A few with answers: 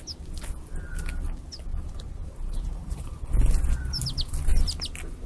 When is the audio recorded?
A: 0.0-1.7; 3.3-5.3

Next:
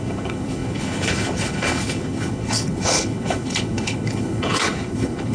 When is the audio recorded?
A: none

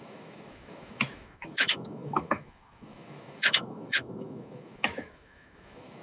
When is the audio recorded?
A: none

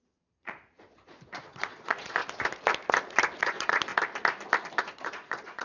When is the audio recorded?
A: 2.2-3.4; 3.9-4.7

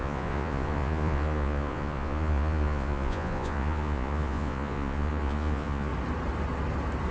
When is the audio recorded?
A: 5.9-7.1

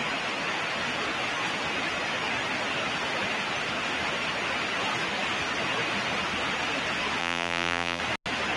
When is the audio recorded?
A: 0.0-7.2; 8.0-8.6

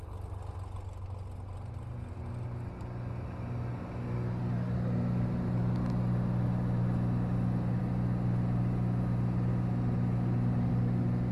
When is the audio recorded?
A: 0.0-11.3

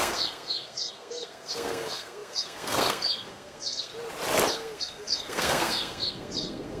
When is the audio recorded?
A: 3.9-4.5